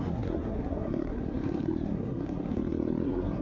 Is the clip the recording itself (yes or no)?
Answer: no